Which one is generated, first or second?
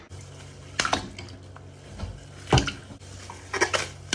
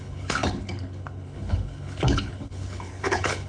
second